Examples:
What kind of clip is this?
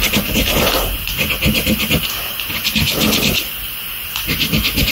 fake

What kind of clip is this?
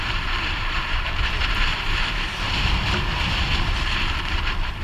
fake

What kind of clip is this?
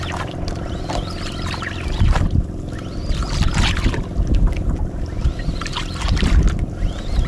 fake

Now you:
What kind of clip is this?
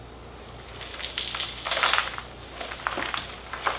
real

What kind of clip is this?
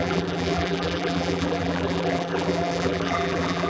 fake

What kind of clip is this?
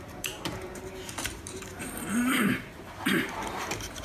fake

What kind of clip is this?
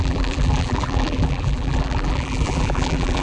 fake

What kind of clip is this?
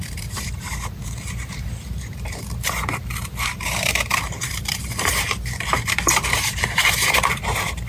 fake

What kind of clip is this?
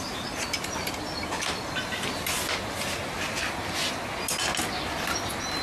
real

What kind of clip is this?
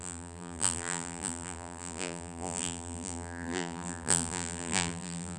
fake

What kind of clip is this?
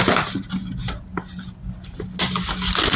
real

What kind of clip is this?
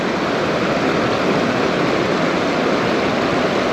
fake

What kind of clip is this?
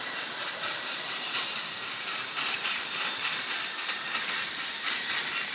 fake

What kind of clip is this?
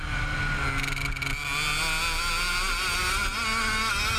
real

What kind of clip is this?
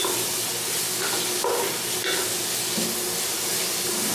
real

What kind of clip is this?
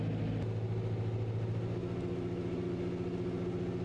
real